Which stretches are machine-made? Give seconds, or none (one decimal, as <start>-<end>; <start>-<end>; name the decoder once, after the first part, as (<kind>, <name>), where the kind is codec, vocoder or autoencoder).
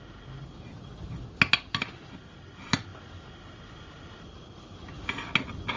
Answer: none